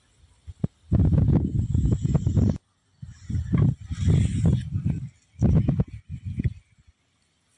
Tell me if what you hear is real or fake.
real